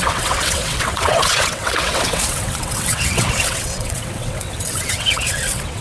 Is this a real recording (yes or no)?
no